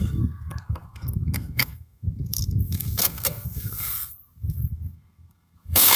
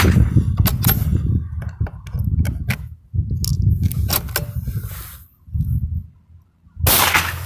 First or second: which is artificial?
first